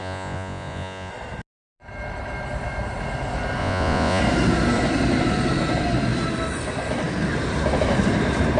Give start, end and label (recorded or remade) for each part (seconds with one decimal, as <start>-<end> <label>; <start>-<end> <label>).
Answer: 0.0-1.1 remade; 1.1-3.6 recorded; 3.6-4.2 remade; 4.2-8.6 recorded